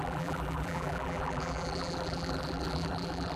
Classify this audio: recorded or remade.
remade